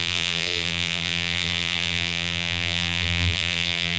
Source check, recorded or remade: remade